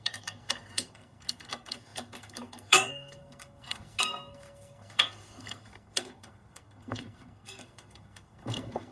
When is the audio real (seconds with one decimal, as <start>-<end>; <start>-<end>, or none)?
none